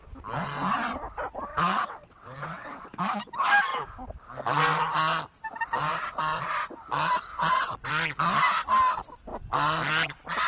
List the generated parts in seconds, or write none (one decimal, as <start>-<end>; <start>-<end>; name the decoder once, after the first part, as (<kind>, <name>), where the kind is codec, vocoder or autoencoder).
1.5-3.0 (vocoder, WaveNeXt); 7.3-7.9